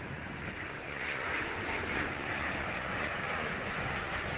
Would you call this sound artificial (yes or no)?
yes